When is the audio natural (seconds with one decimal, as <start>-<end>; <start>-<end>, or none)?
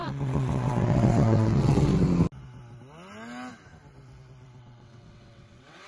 1.9-4.6